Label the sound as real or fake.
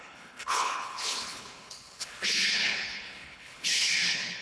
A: fake